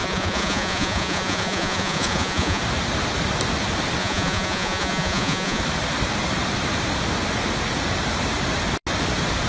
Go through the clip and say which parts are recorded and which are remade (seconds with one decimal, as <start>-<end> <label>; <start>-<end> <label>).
0.0-2.6 remade; 2.6-4.0 recorded; 4.0-5.6 remade; 5.6-9.5 recorded

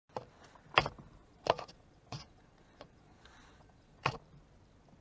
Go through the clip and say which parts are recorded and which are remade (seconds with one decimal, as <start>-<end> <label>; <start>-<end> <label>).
0.0-1.2 recorded; 1.2-4.2 remade; 4.2-5.0 recorded

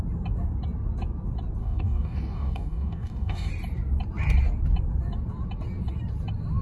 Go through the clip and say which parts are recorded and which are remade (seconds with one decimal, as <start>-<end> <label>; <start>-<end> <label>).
0.0-1.6 recorded; 1.6-3.5 remade; 3.5-6.6 recorded

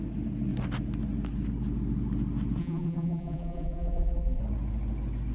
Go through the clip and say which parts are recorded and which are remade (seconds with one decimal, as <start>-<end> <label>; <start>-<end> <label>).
0.0-2.6 recorded; 2.6-4.4 remade; 4.4-5.3 recorded

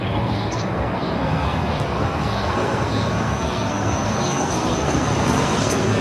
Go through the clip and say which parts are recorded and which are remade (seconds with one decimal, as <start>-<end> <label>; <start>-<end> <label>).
0.0-6.0 remade

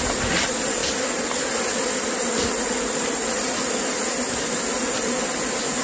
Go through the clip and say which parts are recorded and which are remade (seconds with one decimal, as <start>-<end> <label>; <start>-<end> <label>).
0.0-5.8 recorded

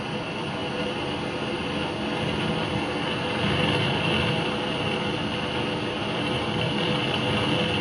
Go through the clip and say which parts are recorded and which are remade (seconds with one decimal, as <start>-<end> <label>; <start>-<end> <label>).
0.0-7.8 recorded